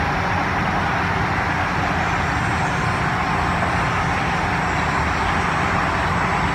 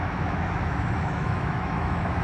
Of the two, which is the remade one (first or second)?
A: second